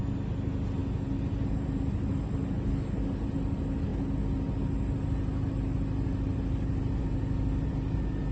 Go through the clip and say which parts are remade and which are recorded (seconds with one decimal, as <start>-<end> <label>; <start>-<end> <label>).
0.0-8.3 recorded